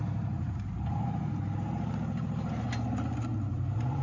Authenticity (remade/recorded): remade